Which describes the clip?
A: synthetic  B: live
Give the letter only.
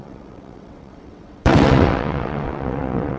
A